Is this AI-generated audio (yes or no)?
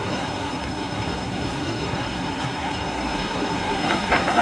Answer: yes